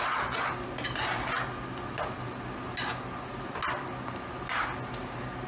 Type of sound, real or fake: real